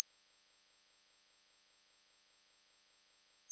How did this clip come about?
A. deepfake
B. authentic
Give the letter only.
A